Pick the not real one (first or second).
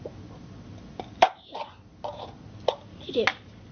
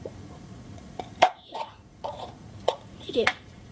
second